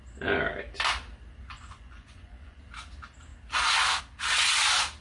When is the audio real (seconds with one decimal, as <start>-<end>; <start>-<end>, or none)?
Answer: 0.0-1.4; 2.6-5.0